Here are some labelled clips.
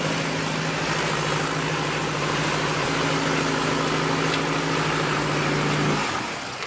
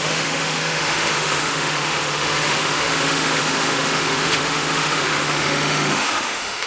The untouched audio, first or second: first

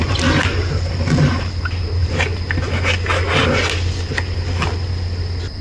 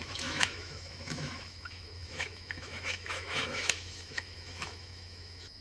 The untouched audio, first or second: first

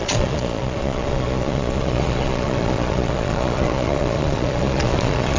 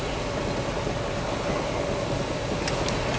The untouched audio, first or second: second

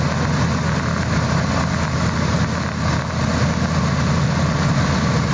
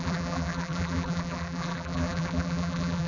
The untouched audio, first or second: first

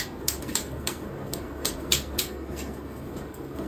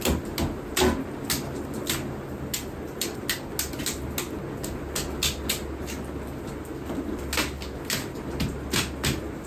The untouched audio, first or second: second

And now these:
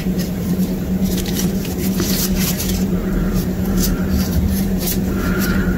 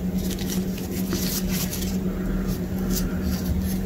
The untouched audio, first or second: second